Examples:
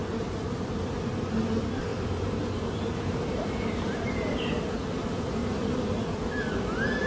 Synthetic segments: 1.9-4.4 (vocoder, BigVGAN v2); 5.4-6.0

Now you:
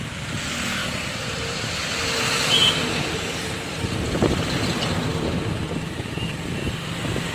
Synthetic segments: 0.8-3.4 (vocoder, BigVGAN v2); 5.1-6.1

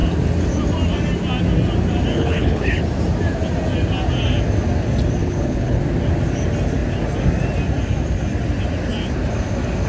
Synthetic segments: 2.1-2.8 (codec, HILCodec); 5.2-5.8

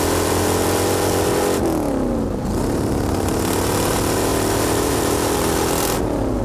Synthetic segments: none

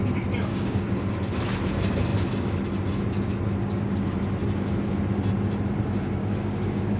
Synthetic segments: 0.5-1.0 (codec, DAC); 3.6-4.2; 6.2-7.0

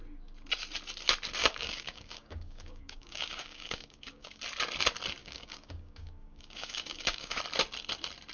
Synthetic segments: 1.4-4.4 (codec, DAC); 5.2-7.4

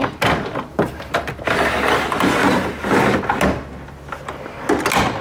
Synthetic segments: 0.7-1.3 (vocoder, BigVGAN v2); 2.4-2.9